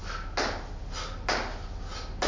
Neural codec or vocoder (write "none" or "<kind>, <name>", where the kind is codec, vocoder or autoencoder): none